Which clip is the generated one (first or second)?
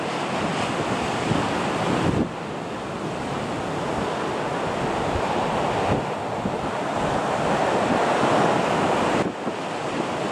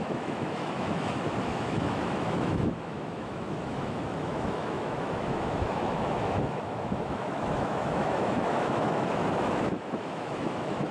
second